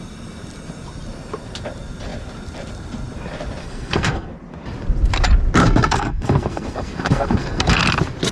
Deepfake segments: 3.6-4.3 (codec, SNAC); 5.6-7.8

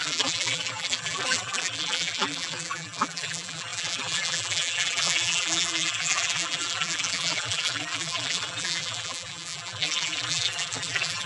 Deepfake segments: 0.0-11.3 (vocoder, BigVGAN v2)

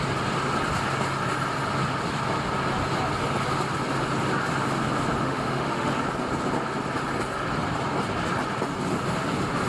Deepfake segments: 5.2-5.9 (autoencoder, DAC-VAE)